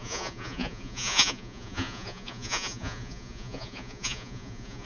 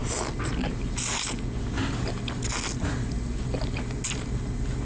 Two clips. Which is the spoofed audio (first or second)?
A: first